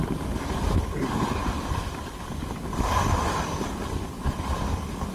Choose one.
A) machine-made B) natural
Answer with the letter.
B